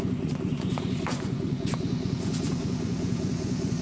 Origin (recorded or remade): remade